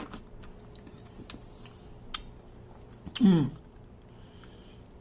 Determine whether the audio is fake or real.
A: real